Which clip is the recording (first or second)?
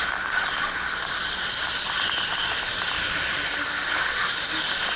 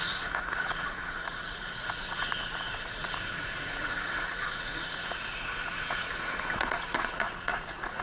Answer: first